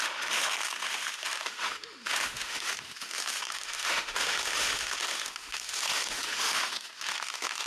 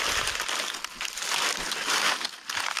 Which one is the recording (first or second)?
second